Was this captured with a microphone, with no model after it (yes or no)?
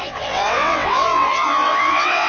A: no